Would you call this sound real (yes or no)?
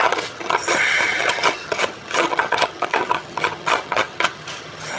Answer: no